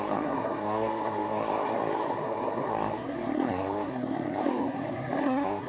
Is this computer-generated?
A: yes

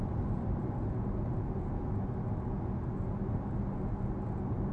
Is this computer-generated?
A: no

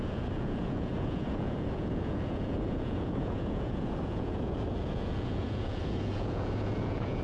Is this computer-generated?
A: yes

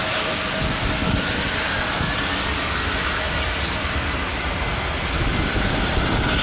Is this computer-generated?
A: no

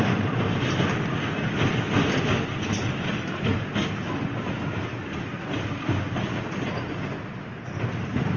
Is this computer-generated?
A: no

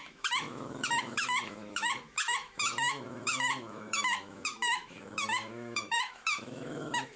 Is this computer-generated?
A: yes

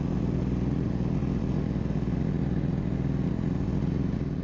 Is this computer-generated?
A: no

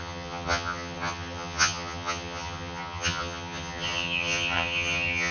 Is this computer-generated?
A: yes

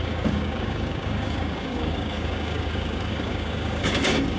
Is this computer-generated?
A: yes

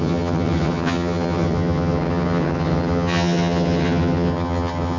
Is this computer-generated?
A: yes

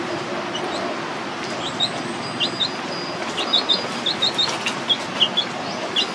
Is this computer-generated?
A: no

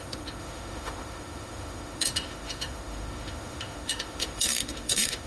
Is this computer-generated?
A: yes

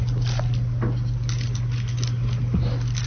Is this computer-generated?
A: no